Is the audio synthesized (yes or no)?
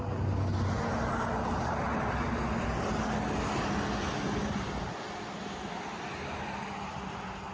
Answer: no